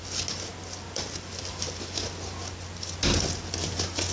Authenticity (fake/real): real